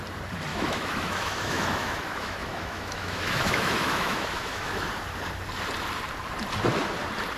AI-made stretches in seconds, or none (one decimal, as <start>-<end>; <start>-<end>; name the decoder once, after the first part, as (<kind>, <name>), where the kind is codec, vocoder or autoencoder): 0.5-4.9 (autoencoder, DAC-VAE)